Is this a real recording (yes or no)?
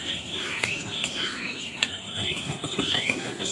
no